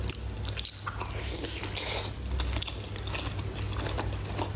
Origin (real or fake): real